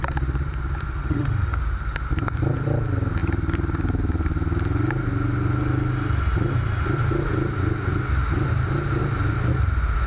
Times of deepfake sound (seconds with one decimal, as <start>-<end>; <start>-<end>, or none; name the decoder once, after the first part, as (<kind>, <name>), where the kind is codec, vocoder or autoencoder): 1.0-1.6 (autoencoder, DAC-VAE)

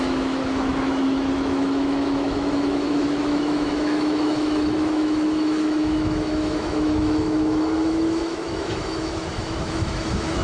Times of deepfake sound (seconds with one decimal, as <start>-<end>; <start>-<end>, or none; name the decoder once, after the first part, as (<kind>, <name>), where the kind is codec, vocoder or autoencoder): 0.0-10.4 (autoencoder, DAC-VAE)